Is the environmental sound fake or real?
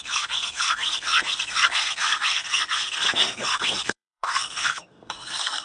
fake